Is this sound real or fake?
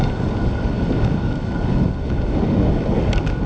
fake